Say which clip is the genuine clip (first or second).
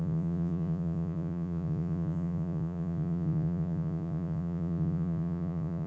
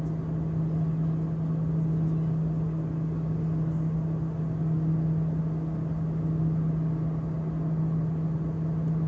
second